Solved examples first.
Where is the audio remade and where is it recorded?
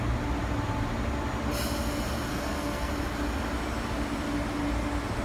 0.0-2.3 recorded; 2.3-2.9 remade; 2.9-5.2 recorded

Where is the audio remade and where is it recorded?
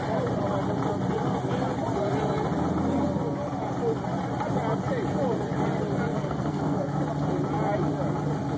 0.0-6.1 recorded; 6.1-7.0 remade; 7.0-8.6 recorded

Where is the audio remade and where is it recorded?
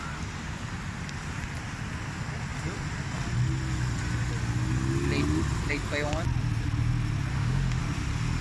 0.0-7.3 recorded; 7.3-7.8 remade; 7.8-8.4 recorded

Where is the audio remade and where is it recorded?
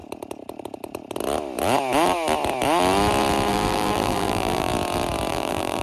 0.0-3.5 recorded; 3.5-4.7 remade; 4.7-5.3 recorded; 5.3-5.8 remade